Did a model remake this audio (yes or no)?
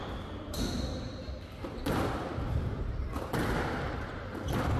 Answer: no